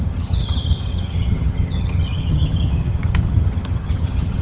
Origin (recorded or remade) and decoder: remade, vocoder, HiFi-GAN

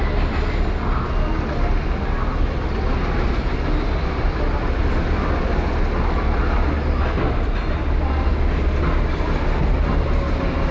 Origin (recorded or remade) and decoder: recorded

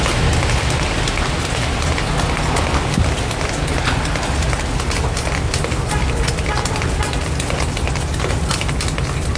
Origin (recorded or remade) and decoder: recorded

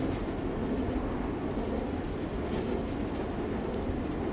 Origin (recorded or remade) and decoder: recorded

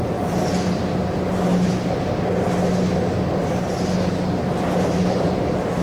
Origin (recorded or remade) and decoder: recorded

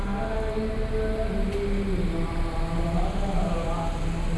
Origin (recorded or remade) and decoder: recorded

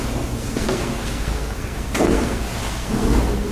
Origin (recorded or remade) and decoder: remade, codec, SNAC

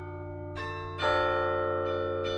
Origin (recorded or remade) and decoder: recorded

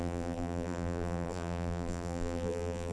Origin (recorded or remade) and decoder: remade, vocoder, BigVGAN v2